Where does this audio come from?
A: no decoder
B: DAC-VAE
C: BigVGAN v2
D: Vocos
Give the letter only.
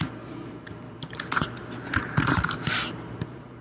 C